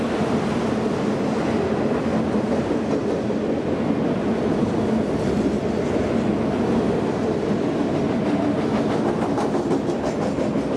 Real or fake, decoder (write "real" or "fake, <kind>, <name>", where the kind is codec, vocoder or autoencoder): real